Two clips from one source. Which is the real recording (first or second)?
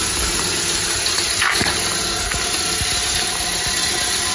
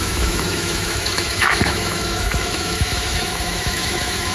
first